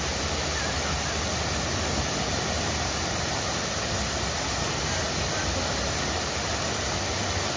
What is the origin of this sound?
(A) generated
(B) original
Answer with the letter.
B